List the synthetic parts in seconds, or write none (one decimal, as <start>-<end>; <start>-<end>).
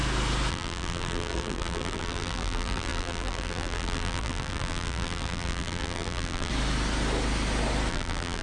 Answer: 0.5-6.5; 7.9-8.4